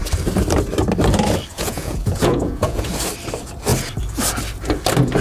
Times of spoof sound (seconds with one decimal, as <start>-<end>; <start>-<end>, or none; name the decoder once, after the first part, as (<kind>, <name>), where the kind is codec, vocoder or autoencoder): 1.5-2.9 (vocoder, Vocos)